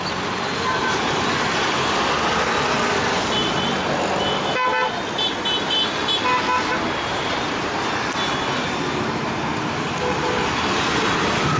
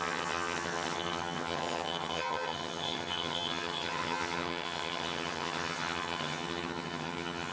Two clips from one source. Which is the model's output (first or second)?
second